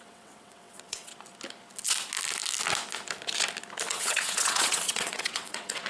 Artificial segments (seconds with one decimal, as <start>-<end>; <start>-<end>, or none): 0.0-1.1; 3.9-5.9